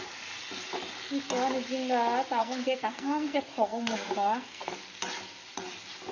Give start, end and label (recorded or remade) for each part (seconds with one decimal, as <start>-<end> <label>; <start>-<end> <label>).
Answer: 0.0-2.4 recorded; 2.4-4.8 remade; 4.8-6.1 recorded